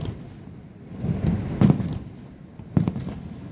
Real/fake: real